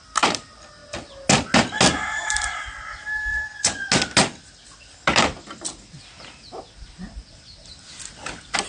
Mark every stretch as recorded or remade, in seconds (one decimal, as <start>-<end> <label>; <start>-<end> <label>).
0.0-3.3 recorded; 3.3-3.9 remade; 3.9-8.7 recorded